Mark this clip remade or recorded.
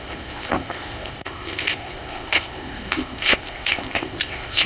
remade